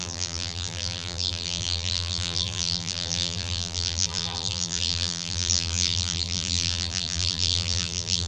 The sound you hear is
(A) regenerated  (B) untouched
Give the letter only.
A